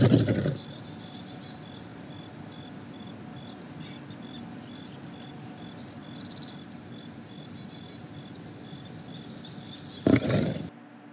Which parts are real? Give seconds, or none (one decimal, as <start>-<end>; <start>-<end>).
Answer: 0.0-11.1